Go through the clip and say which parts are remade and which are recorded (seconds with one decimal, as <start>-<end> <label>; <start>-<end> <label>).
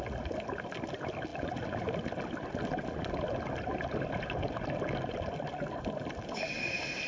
0.0-7.1 recorded